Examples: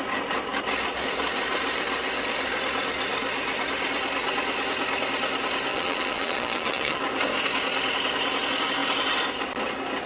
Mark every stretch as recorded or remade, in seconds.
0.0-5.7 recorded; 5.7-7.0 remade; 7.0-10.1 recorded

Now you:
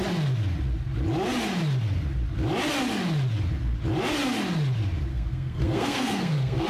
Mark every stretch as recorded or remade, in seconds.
0.0-5.1 recorded; 5.1-6.7 remade